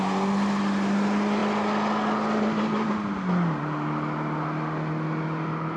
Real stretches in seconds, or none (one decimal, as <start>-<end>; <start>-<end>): 0.0-5.8